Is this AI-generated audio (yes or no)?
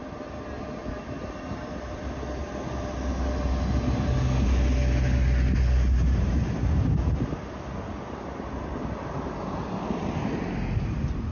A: no